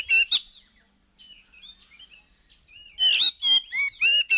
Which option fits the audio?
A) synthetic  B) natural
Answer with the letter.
B